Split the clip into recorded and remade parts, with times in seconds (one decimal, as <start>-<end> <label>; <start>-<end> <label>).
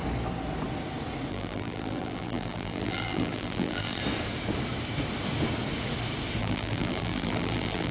0.0-1.3 recorded; 1.3-4.0 remade; 4.0-6.4 recorded; 6.4-7.9 remade